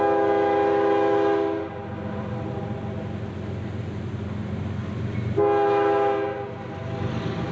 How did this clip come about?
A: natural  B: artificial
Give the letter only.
A